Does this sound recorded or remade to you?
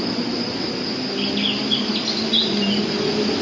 recorded